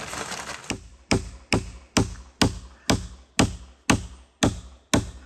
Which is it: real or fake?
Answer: real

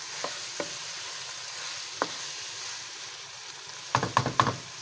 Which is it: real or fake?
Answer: real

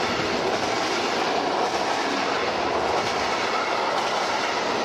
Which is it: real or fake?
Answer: real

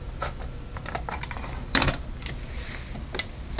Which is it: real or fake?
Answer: real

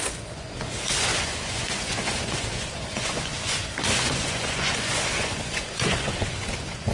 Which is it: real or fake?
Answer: fake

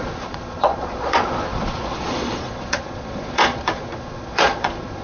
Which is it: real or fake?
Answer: fake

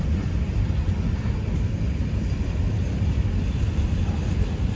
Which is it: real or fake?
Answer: real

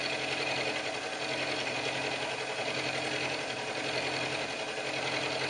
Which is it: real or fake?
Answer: real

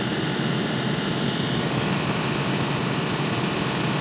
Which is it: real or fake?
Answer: real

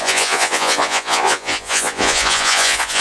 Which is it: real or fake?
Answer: fake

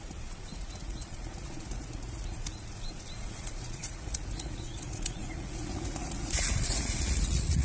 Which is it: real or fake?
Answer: fake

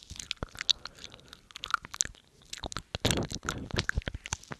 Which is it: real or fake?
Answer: real